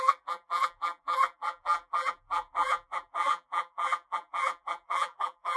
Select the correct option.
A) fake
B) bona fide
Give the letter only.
A